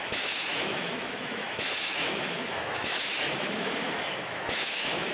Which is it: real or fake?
fake